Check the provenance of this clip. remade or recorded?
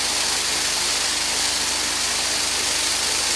recorded